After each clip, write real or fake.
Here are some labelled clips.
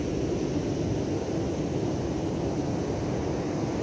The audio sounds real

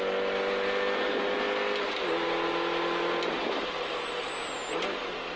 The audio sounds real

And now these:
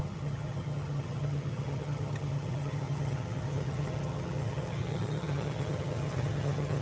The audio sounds fake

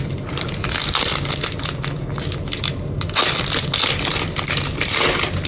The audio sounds real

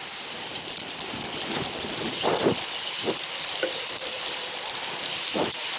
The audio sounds real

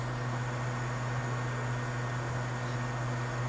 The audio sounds real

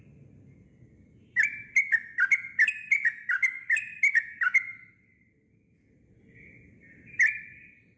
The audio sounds real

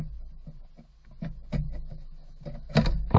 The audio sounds real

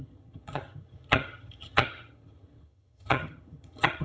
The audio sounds fake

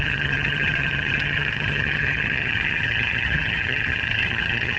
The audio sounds fake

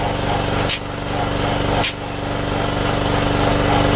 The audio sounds real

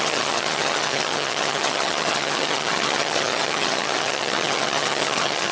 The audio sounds fake